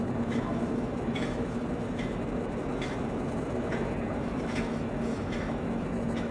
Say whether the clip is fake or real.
fake